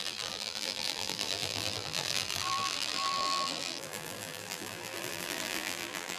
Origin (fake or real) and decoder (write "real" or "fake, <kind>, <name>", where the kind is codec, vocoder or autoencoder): fake, vocoder, BigVGAN v2